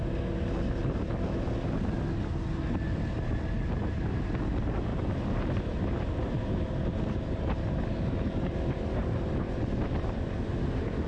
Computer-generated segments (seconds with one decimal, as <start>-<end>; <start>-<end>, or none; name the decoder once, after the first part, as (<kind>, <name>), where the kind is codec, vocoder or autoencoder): 4.9-5.6 (vocoder, BigVGAN v2)